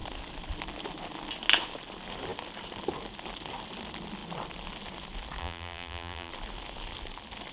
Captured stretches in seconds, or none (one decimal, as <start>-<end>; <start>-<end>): 0.0-5.4; 6.3-7.5